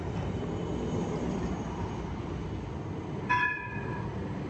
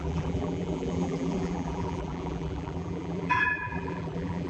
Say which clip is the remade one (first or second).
second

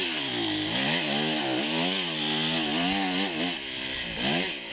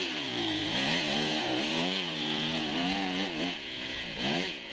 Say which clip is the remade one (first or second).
second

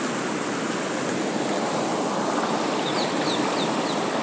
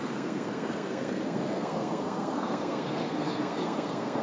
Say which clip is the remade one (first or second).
second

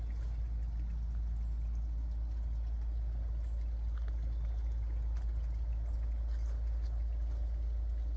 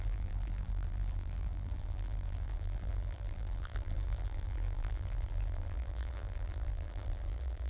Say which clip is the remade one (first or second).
second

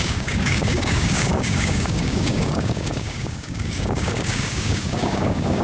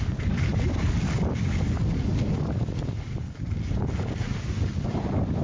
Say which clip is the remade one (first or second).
first